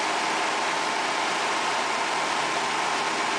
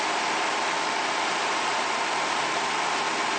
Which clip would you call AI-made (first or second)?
second